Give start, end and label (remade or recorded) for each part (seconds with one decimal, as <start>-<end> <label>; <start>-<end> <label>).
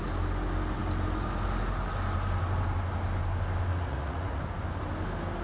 0.0-3.7 recorded; 3.7-4.4 remade; 4.4-5.4 recorded